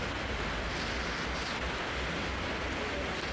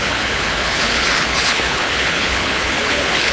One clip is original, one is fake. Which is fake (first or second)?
second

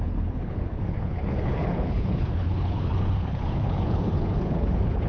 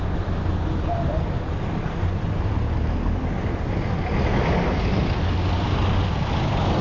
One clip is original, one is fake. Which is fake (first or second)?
first